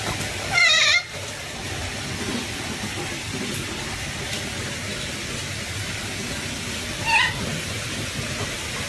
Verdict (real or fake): fake